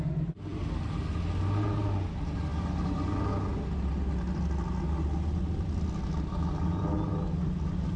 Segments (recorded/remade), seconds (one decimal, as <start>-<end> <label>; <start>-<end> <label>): 0.0-8.0 recorded